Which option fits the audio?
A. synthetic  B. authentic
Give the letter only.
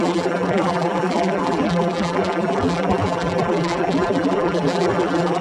A